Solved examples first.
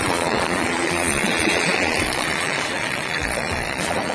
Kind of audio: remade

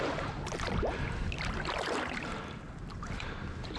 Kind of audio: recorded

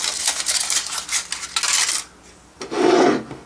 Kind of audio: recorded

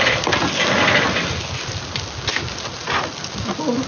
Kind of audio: recorded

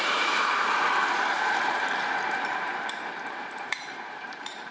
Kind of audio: remade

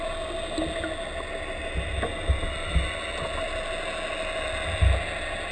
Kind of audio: recorded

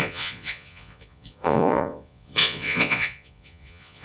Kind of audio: remade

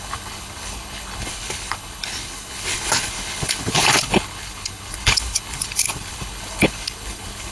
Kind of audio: remade